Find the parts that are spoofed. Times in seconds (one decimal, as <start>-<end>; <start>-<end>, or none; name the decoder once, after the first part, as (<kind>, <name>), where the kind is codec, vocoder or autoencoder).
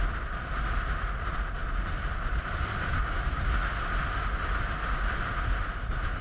none